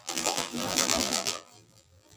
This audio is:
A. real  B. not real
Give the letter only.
B